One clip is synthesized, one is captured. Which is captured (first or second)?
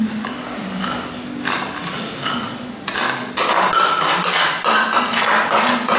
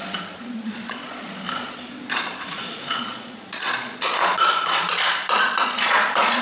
first